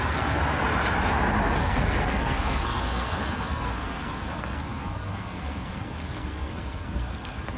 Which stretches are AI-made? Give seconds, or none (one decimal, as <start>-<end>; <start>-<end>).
0.0-0.4; 1.6-7.6